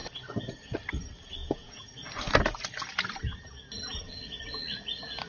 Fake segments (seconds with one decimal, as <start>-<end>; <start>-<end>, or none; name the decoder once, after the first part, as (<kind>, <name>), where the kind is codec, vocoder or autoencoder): 1.4-1.9 (vocoder, Vocos)